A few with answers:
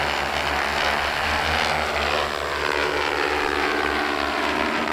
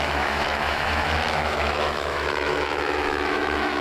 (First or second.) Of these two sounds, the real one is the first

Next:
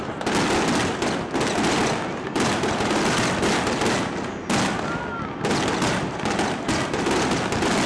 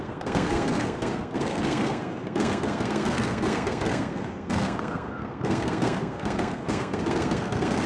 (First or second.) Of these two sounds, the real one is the first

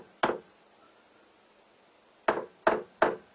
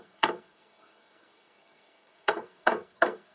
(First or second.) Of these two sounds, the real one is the first